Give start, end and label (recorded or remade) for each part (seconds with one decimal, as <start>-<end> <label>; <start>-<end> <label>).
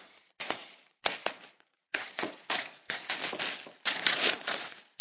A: 0.0-3.2 remade; 3.2-3.9 recorded; 3.9-5.0 remade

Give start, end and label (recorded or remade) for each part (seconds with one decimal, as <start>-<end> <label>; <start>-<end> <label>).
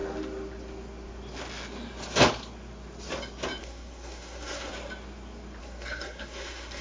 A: 0.0-3.6 recorded; 3.6-4.7 remade; 4.7-5.6 recorded; 5.6-6.8 remade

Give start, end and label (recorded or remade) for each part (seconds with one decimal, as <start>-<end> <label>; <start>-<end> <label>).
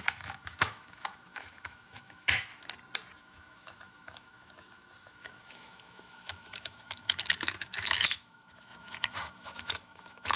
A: 0.0-2.5 remade; 2.5-3.2 recorded; 3.2-10.4 remade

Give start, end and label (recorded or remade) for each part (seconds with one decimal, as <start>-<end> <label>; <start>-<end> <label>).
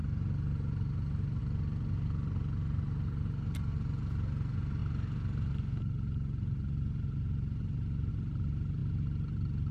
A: 0.0-9.7 recorded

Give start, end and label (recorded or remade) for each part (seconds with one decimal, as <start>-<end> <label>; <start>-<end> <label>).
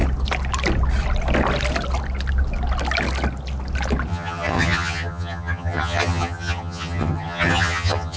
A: 0.0-4.1 recorded; 4.1-8.2 remade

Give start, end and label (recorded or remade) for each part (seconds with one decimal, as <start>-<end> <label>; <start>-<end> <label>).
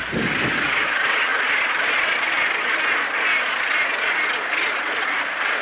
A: 0.0-5.6 recorded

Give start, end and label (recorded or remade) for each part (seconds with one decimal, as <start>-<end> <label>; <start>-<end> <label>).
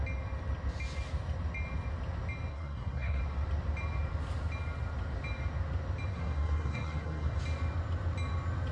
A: 0.0-2.5 recorded; 2.5-3.2 remade; 3.2-6.1 recorded; 6.1-7.4 remade; 7.4-8.7 recorded